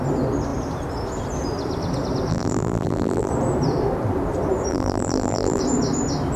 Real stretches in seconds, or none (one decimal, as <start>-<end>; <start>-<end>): 0.0-2.3; 3.3-4.7; 5.6-6.4